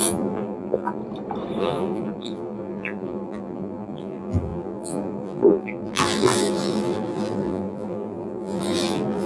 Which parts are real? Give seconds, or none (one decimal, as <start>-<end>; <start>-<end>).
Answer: 1.0-1.6